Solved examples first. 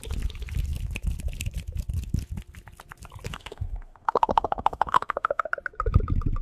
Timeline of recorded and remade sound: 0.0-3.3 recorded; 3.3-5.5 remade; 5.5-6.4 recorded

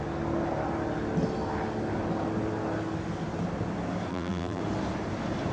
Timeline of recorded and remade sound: 0.0-4.1 recorded; 4.1-4.6 remade; 4.6-5.5 recorded

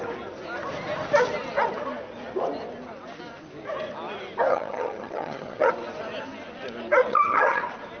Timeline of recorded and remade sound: 0.0-4.5 recorded; 4.5-5.7 remade; 5.7-7.1 recorded; 7.1-7.6 remade; 7.6-8.0 recorded

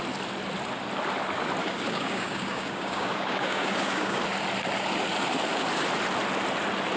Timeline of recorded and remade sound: 0.0-1.6 recorded; 1.6-4.2 remade; 4.2-7.0 recorded

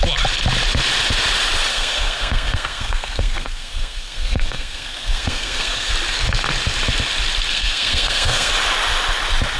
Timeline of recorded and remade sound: 0.0-1.7 recorded; 1.7-5.9 remade; 5.9-7.5 recorded; 7.5-8.5 remade; 8.5-9.6 recorded

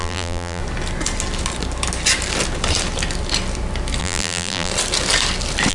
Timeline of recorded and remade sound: 0.0-0.6 remade; 0.6-4.0 recorded; 4.0-4.7 remade; 4.7-5.7 recorded

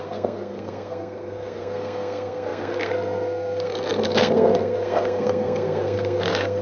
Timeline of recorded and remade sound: 0.0-6.6 remade